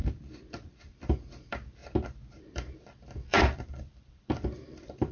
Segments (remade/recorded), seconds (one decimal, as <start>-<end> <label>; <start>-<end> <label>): 0.0-0.5 recorded; 0.5-1.8 remade; 1.8-2.4 recorded; 2.4-5.1 remade